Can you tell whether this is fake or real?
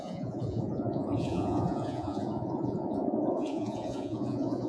fake